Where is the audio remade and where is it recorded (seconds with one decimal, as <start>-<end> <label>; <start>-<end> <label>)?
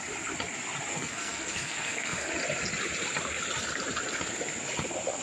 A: 0.0-0.9 recorded; 0.9-2.3 remade; 2.3-5.2 recorded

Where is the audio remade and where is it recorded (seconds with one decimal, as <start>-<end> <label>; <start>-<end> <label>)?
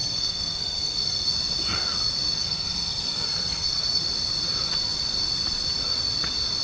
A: 0.0-1.3 remade; 1.3-2.4 recorded; 2.4-4.0 remade; 4.0-6.6 recorded